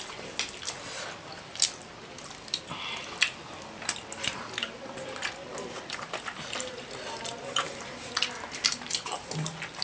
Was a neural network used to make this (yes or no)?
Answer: no